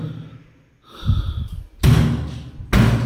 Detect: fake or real real